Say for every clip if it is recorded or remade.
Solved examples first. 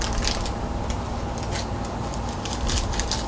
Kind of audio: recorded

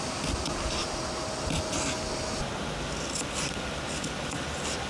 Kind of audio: recorded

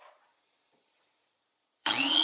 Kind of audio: remade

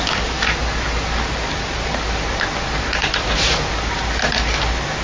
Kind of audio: recorded